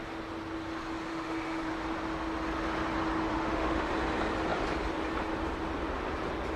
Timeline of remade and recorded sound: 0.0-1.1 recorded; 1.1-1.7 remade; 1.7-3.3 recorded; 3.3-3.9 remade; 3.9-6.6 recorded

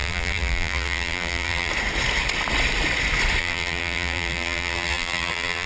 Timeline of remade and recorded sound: 0.0-1.7 remade; 1.7-3.4 recorded; 3.4-5.7 remade

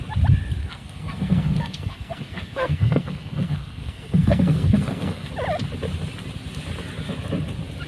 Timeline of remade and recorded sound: 0.0-0.6 recorded; 0.6-5.3 remade; 5.3-7.9 recorded

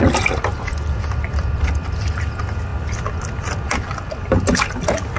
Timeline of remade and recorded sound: 0.0-5.2 remade

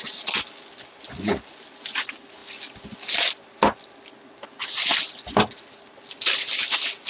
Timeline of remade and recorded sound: 0.0-7.1 recorded

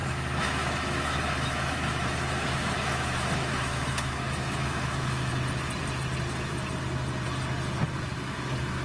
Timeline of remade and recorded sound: 0.0-5.3 remade; 5.3-8.8 recorded

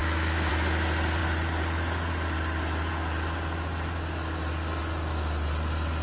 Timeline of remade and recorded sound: 0.0-0.5 remade; 0.5-6.0 recorded

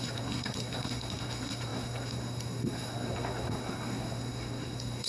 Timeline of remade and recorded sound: 0.0-5.1 remade